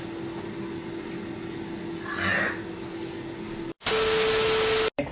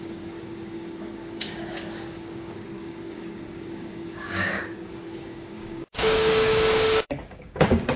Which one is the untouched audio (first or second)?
first